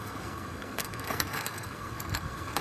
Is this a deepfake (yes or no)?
yes